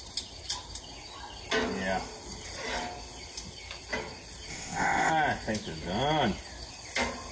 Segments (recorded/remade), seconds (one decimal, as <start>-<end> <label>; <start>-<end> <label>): 0.0-4.5 recorded; 4.5-5.1 remade; 5.1-7.3 recorded